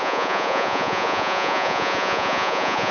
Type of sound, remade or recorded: remade